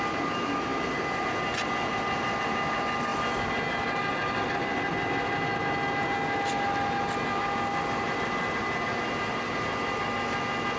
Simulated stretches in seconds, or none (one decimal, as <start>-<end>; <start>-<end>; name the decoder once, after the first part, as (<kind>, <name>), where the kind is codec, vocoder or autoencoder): none